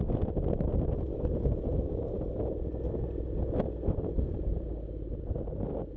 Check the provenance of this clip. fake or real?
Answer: real